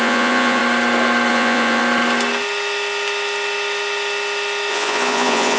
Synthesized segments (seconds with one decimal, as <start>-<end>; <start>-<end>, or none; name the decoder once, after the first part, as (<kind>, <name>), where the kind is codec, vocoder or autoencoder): 0.0-0.6 (vocoder, Vocos); 1.3-1.8; 4.7-5.6